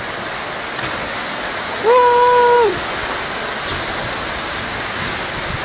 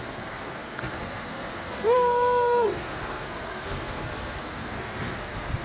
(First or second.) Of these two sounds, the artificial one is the second